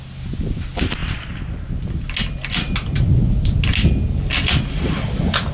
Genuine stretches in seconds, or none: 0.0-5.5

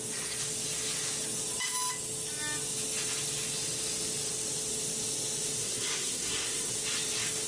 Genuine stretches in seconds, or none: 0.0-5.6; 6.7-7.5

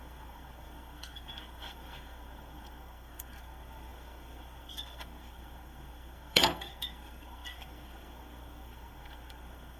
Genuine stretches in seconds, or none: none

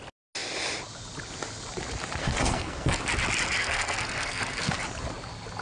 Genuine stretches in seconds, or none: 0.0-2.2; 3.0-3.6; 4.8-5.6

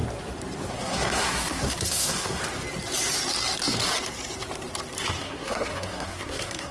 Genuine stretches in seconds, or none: 0.0-0.7; 2.4-5.2

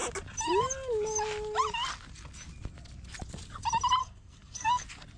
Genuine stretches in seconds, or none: 0.0-4.0; 4.8-5.2